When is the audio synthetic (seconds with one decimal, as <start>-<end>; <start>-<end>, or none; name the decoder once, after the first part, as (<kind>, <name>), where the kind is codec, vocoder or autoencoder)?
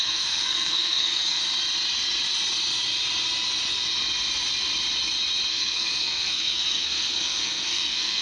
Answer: 0.0-1.4 (codec, SNAC); 5.5-8.2